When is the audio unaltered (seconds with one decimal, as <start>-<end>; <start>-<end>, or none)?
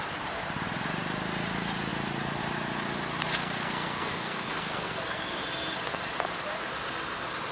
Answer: 0.0-3.3; 5.4-7.5